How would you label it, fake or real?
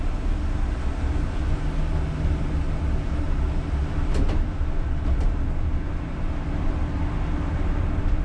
real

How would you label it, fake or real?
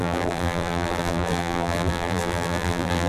fake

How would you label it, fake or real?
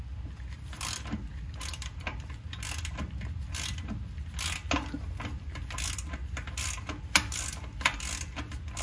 real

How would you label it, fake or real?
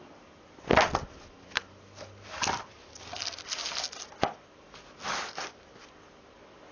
real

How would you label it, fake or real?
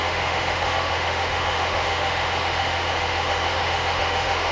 fake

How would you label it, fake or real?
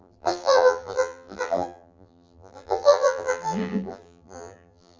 fake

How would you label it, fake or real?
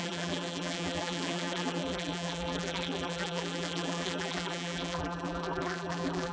fake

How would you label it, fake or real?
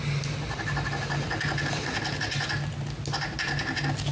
real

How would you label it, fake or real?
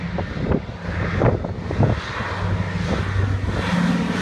real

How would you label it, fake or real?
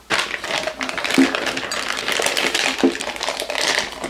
real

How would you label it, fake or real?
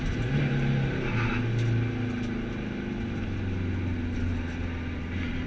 real